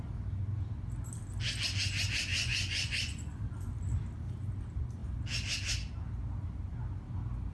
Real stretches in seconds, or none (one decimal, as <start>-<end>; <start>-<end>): 0.0-2.3; 3.5-7.5